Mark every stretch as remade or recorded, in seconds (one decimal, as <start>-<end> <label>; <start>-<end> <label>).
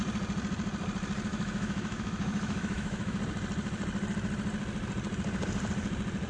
0.0-1.3 recorded; 1.3-3.2 remade; 3.2-6.3 recorded